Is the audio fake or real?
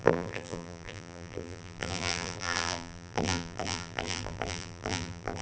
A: fake